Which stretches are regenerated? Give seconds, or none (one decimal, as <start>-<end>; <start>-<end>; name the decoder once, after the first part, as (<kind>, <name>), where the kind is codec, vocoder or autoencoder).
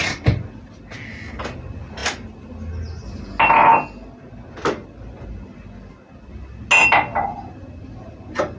none